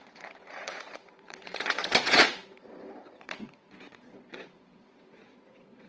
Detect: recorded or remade remade